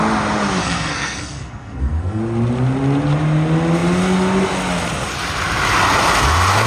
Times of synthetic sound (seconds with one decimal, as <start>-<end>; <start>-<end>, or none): 0.6-2.2